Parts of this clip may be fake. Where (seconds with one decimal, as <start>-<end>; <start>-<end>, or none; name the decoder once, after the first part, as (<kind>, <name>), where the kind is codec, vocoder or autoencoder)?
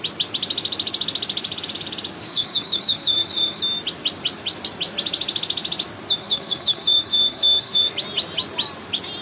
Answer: 2.2-3.6 (autoencoder, DAC-VAE); 6.2-7.9